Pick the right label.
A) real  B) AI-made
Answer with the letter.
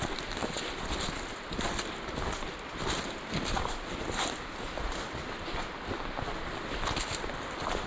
B